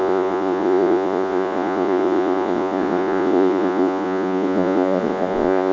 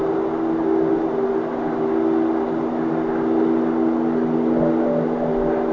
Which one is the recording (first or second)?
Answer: second